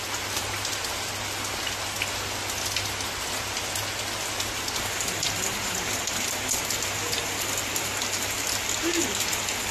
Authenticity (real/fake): real